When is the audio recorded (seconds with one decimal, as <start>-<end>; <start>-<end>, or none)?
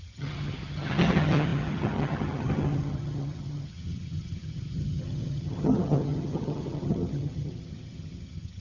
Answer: none